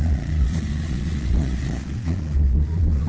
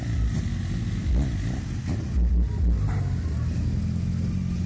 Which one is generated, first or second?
first